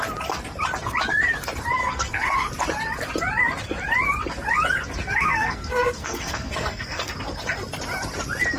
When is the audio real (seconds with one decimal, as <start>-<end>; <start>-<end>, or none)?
0.0-1.8; 2.5-5.0; 7.1-8.6